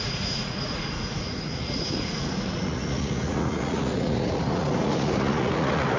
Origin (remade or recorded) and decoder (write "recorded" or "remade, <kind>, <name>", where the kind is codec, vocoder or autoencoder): remade, vocoder, Vocos